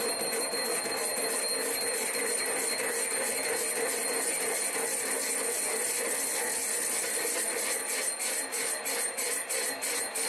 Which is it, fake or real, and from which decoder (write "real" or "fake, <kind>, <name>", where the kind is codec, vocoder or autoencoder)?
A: real